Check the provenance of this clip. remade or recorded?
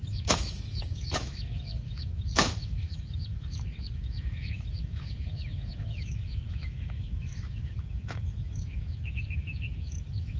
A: remade